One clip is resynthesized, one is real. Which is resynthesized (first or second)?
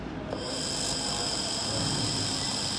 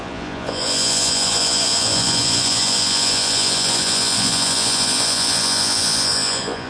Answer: second